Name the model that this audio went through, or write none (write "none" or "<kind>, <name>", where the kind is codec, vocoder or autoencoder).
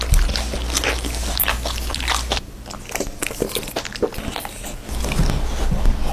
none